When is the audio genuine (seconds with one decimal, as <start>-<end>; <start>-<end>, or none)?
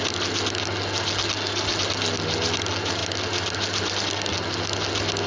0.0-5.3